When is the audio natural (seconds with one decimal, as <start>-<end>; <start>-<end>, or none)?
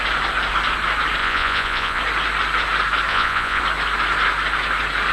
0.0-1.2; 2.0-3.1; 3.6-5.1